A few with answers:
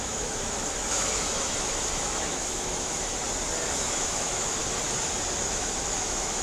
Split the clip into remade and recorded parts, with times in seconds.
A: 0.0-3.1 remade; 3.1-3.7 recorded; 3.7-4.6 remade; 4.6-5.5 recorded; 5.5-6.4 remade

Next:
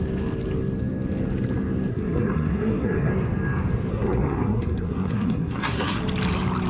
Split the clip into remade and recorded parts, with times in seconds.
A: 0.0-1.9 recorded; 1.9-3.1 remade; 3.1-3.9 recorded; 3.9-6.0 remade; 6.0-6.7 recorded

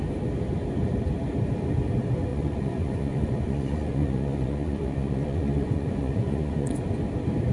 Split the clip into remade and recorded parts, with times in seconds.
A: 0.0-2.3 recorded; 2.3-6.8 remade; 6.8-7.5 recorded